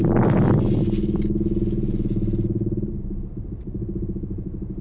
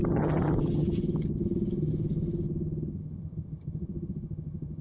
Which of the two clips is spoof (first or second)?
second